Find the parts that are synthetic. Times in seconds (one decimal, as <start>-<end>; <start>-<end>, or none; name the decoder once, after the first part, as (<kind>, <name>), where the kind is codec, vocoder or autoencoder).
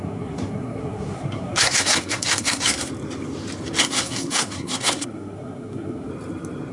0.0-2.9 (codec, SNAC); 3.8-6.1